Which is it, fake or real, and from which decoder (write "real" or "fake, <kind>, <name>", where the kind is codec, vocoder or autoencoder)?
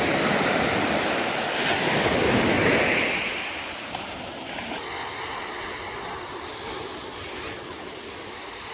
real